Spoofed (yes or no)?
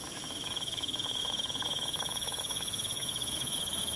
yes